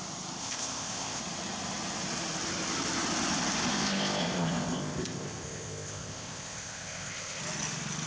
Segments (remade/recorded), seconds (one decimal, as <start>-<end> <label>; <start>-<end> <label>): 0.0-0.4 recorded; 0.4-1.2 remade; 1.2-3.7 recorded; 3.7-7.4 remade; 7.4-8.1 recorded